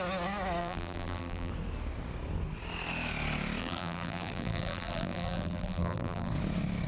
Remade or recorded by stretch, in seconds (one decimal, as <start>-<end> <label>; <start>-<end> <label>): 0.0-0.6 recorded; 0.6-1.5 remade; 1.5-3.6 recorded; 3.6-6.3 remade; 6.3-6.9 recorded